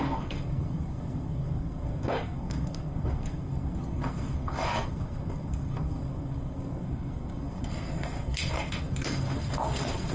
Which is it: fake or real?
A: fake